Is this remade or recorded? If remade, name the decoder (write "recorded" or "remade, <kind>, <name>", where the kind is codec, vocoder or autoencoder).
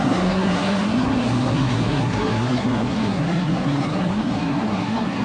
remade, codec, SNAC